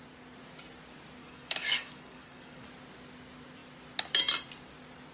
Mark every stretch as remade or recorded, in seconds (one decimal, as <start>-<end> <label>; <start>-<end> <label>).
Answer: 0.0-1.2 recorded; 1.2-2.7 remade; 2.7-5.1 recorded